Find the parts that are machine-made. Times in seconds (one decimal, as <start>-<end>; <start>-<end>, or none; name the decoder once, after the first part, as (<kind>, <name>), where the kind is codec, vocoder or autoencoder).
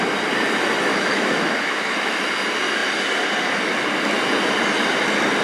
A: 0.9-2.2 (autoencoder, DAC-VAE)